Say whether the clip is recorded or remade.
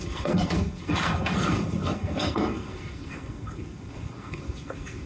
remade